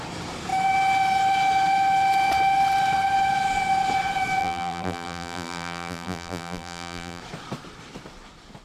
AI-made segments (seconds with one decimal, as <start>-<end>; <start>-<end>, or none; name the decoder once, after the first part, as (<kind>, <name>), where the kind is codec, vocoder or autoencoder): 4.4-7.2 (vocoder, BigVGAN v2)